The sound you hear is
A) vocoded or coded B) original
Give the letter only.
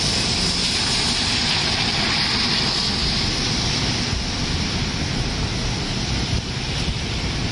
B